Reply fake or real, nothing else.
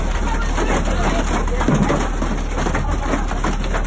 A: real